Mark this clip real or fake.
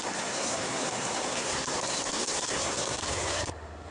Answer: fake